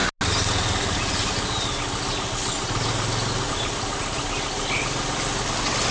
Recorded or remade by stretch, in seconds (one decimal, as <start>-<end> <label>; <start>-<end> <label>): 0.0-5.9 recorded